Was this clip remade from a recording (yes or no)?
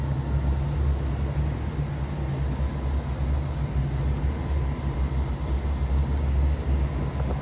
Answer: no